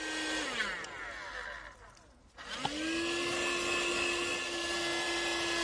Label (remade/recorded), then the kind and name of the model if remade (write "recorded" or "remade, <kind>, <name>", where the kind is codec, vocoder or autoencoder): recorded